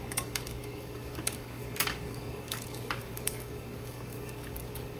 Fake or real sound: fake